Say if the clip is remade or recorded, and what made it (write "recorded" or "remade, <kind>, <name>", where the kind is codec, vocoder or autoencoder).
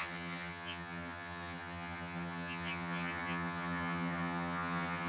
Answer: remade, vocoder, HiFi-GAN